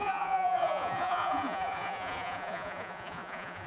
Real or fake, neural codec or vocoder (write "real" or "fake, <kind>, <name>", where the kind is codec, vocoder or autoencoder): fake, vocoder, Vocos